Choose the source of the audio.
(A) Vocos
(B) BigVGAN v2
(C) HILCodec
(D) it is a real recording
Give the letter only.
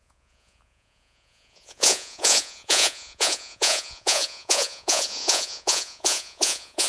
A